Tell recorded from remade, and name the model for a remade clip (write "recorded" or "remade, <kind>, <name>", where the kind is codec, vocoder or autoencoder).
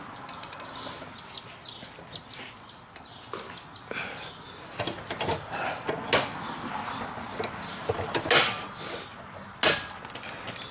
recorded